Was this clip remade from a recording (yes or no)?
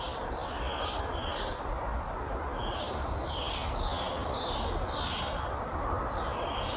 no